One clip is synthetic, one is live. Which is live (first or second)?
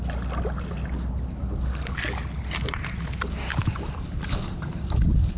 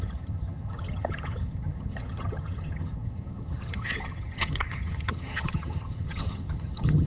first